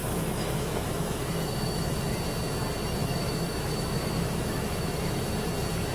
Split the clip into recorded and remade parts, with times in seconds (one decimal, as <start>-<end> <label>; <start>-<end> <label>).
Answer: 0.0-2.0 remade; 2.0-3.0 recorded; 3.0-5.2 remade; 5.2-5.9 recorded